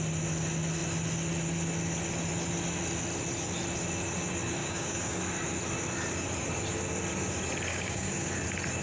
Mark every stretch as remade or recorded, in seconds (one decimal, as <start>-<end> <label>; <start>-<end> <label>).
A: 0.0-4.6 recorded; 4.6-5.2 remade; 5.2-7.7 recorded; 7.7-8.3 remade; 8.3-8.8 recorded